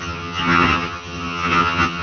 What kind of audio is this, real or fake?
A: fake